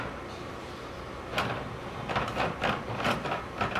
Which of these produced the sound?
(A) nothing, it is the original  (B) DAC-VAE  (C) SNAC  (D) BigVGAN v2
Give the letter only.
A